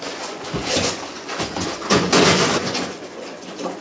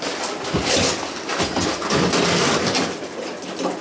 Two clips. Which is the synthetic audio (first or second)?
first